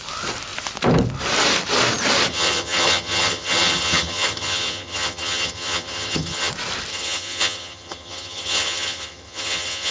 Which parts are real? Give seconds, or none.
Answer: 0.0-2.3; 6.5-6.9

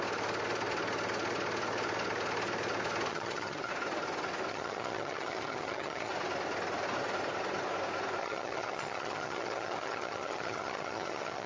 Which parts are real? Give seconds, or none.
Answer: 0.0-3.1; 3.7-4.5; 6.1-8.2

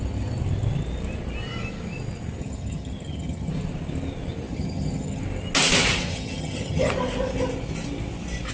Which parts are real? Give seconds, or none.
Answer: 0.0-2.4; 3.5-4.5; 5.2-6.1; 6.9-8.5